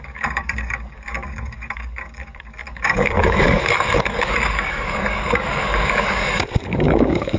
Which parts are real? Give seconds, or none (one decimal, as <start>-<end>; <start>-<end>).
none

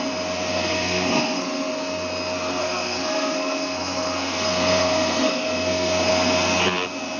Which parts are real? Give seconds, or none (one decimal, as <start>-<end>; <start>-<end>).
0.0-0.5; 1.7-2.6; 6.1-7.2